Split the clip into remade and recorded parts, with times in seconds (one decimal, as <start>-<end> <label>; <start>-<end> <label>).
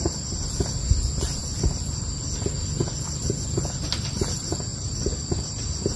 0.0-6.0 recorded